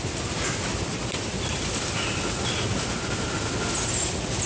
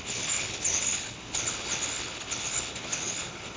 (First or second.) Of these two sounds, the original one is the first